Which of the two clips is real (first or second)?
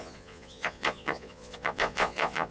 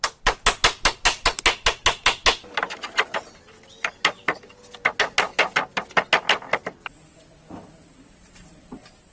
second